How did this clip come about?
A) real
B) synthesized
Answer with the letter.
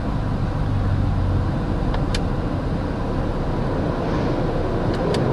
A